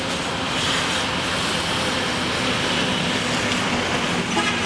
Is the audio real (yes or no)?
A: yes